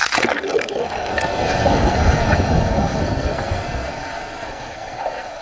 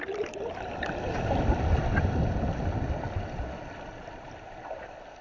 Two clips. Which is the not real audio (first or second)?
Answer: first